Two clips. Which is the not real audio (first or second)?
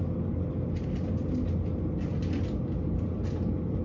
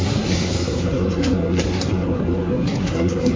second